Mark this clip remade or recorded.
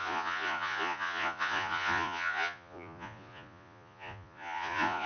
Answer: remade